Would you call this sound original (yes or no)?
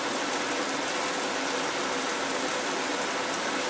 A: yes